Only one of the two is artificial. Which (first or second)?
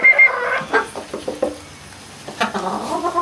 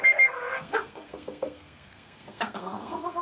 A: second